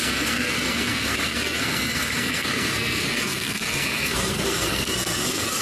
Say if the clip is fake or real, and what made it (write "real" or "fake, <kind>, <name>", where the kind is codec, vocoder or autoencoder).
fake, codec, SNAC